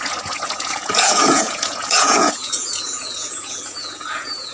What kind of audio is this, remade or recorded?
remade